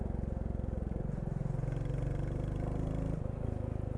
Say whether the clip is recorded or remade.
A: recorded